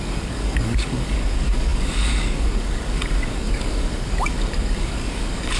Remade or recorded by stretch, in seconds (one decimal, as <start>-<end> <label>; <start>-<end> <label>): 0.0-5.6 remade